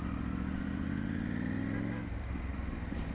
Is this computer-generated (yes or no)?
no